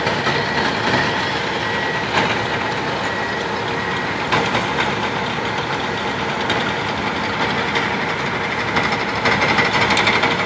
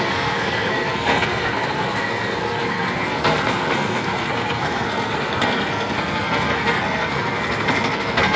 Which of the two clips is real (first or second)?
first